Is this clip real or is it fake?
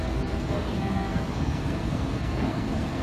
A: fake